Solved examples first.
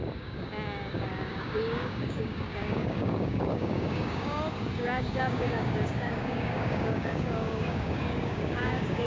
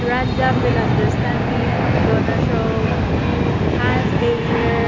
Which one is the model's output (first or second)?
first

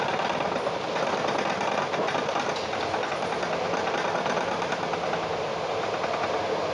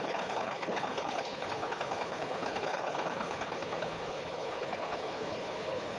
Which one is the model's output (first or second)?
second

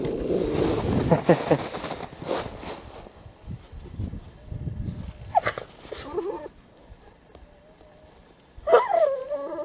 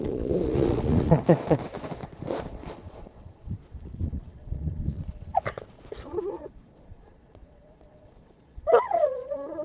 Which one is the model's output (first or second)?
second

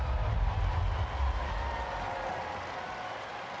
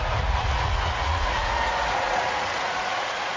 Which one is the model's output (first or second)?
second